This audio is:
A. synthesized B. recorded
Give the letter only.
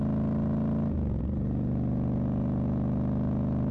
B